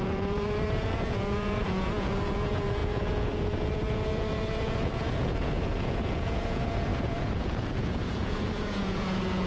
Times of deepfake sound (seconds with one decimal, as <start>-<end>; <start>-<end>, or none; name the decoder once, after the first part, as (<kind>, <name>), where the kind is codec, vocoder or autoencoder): 0.0-9.5 (vocoder, Vocos)